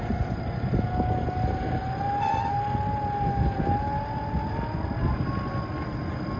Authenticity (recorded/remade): recorded